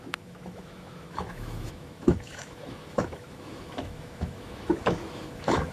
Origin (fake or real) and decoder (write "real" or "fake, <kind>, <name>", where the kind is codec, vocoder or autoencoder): fake, autoencoder, DAC-VAE